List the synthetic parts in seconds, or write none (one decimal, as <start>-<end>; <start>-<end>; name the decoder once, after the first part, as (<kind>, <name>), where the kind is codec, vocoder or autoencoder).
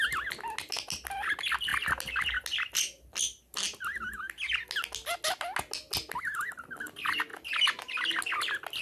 none